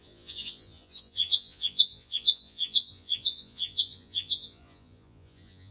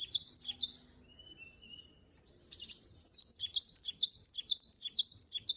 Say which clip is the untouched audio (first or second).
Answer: second